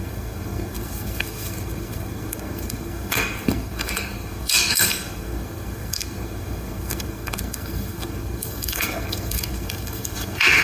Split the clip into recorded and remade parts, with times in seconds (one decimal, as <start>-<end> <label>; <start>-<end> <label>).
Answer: 0.0-10.6 remade